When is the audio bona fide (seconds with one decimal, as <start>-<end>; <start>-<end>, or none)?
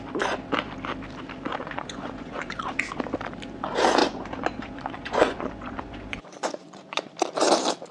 0.0-1.6; 2.7-4.0; 7.1-7.9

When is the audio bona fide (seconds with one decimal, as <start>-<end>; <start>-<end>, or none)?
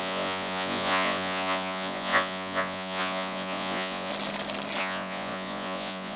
4.1-4.8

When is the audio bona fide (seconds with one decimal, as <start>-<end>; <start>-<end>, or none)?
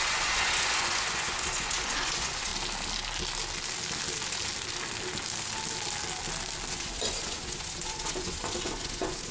2.5-6.7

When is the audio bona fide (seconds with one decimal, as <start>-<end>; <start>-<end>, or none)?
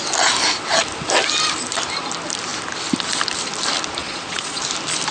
0.0-4.0; 4.6-5.1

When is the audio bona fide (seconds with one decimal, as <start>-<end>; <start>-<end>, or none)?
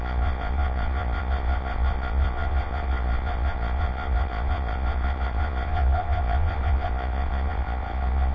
none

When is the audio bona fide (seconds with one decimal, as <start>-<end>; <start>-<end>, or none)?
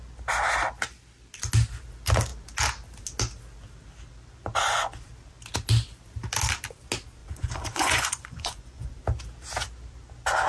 0.0-7.2; 8.9-10.5